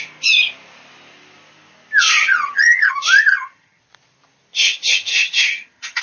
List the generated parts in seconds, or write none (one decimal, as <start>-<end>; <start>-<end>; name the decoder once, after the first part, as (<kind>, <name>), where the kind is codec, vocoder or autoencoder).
2.1-2.9 (vocoder, HiFi-GAN); 3.3-3.8; 5.1-6.0